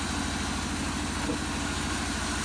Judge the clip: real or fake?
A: real